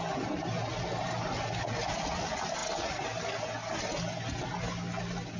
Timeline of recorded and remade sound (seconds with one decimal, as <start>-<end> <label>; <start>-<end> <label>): 0.0-5.4 recorded